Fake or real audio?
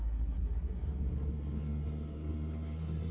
fake